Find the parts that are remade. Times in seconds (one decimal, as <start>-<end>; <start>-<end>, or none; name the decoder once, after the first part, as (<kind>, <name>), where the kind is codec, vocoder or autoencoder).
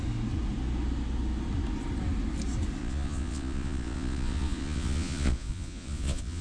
2.8-6.4 (vocoder, Vocos)